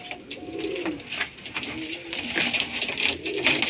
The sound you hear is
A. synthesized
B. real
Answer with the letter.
B